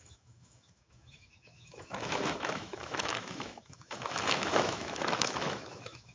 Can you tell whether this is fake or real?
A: fake